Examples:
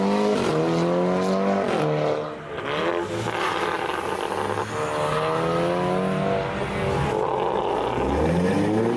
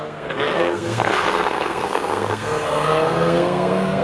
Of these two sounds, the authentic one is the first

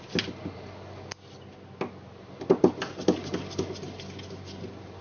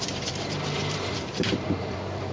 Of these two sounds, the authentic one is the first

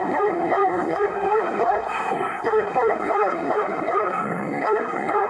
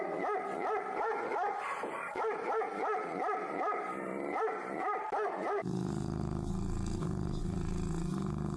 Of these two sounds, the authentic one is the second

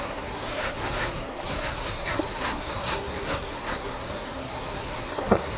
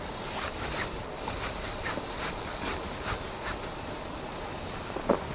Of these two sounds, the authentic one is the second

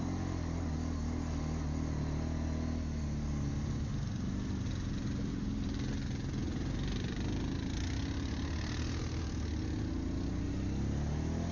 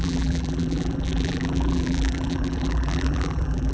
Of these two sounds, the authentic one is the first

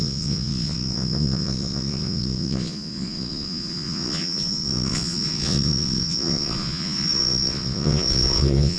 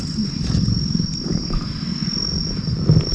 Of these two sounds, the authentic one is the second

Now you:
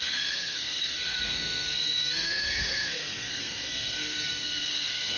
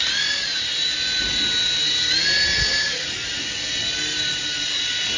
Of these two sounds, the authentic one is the second